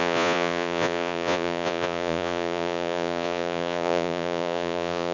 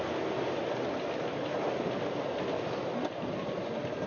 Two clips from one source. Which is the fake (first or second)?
first